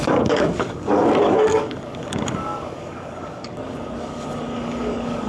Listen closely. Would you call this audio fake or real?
fake